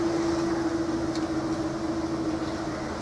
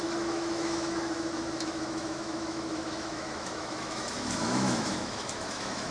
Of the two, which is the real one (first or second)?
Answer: first